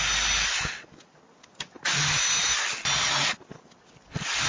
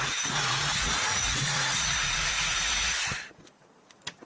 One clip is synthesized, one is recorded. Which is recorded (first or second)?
first